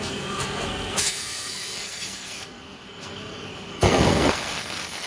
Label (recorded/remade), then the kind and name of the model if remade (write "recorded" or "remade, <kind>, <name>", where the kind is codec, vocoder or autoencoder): remade, codec, SNAC